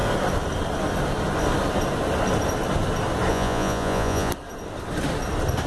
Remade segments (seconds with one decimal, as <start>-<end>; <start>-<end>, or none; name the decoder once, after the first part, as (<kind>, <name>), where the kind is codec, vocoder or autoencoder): 3.3-4.3 (vocoder, Vocos)